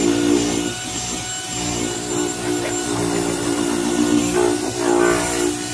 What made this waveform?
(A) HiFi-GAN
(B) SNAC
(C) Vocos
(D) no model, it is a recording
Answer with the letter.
D